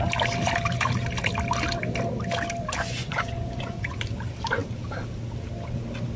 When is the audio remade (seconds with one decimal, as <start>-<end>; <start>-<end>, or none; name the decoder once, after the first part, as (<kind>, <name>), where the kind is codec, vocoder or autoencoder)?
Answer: 2.8-4.0 (vocoder, Vocos)